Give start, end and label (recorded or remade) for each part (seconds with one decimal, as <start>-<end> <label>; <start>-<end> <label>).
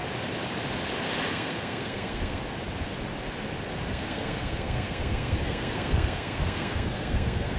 0.0-1.3 recorded; 1.3-2.4 remade; 2.4-3.9 recorded; 3.9-7.6 remade